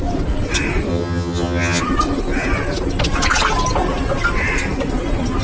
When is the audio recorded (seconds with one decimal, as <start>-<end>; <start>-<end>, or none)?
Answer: 0.0-0.9; 1.8-5.4